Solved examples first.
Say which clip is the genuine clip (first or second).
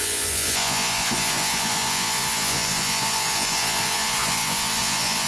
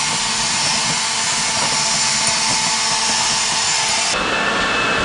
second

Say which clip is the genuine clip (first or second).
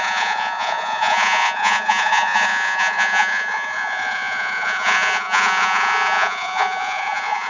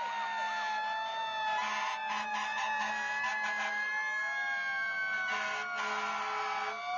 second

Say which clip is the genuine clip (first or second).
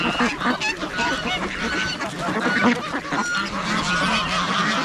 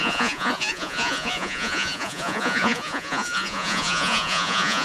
first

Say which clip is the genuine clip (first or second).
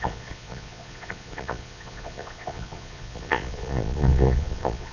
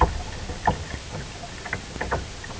second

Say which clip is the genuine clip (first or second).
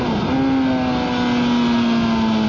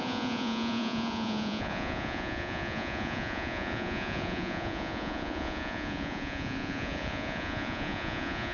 first